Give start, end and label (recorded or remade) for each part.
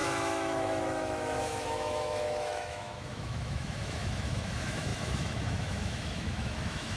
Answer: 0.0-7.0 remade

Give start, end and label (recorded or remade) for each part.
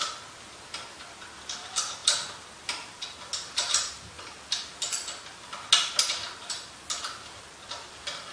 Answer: 0.0-8.3 recorded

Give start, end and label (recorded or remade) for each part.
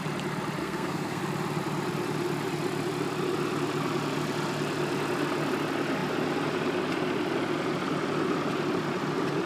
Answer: 0.0-0.6 recorded; 0.6-1.2 remade; 1.2-9.5 recorded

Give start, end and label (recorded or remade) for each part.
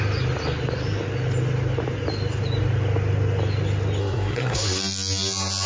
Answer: 0.0-4.0 recorded; 4.0-4.8 remade; 4.8-5.7 recorded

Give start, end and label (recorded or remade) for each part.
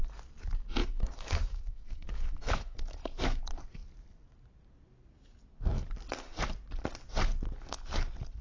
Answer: 0.0-0.8 recorded; 0.8-3.4 remade; 3.4-8.4 recorded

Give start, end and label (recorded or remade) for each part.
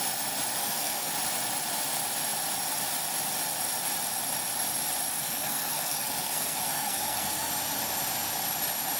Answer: 0.0-0.6 recorded; 0.6-1.1 remade; 1.1-5.2 recorded; 5.2-7.5 remade; 7.5-9.0 recorded